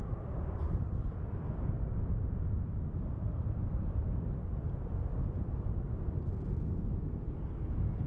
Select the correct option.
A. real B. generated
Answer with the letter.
A